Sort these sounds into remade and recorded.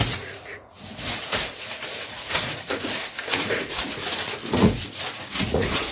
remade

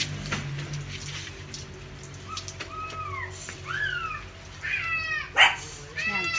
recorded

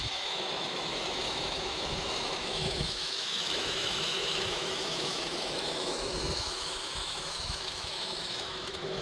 remade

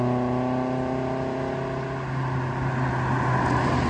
recorded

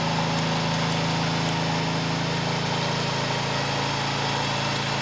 recorded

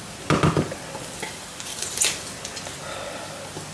recorded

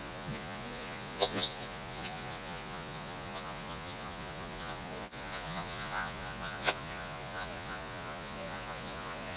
remade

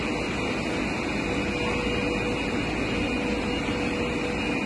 recorded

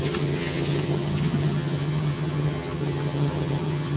remade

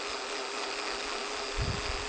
recorded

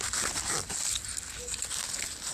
recorded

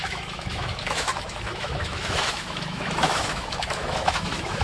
remade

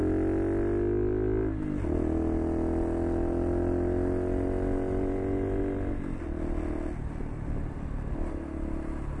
recorded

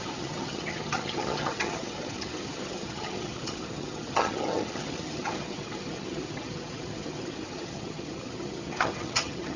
remade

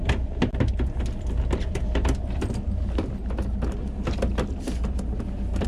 recorded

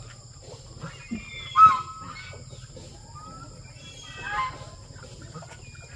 recorded